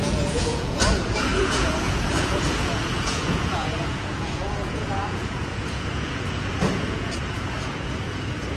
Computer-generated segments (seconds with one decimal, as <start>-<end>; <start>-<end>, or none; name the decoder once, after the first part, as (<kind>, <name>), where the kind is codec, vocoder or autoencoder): 0.0-8.6 (vocoder, Vocos)